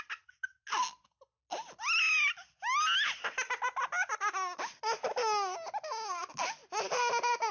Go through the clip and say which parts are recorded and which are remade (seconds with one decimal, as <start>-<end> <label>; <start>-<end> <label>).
0.0-7.5 recorded